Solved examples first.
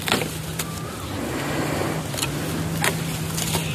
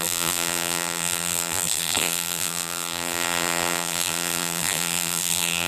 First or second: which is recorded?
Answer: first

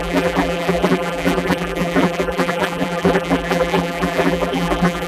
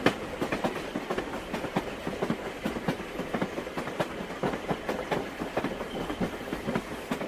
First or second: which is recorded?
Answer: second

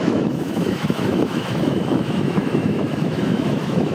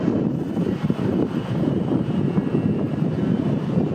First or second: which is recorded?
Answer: second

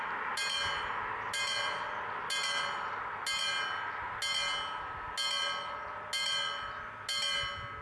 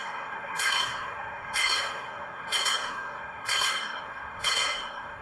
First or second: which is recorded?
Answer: first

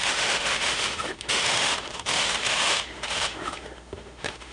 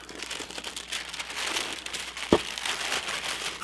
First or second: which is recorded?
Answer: second